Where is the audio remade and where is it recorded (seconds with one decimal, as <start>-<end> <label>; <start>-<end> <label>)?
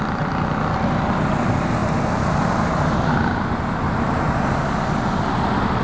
0.0-5.8 recorded